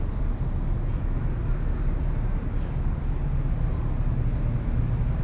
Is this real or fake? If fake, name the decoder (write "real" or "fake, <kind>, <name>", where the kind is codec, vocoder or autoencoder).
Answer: real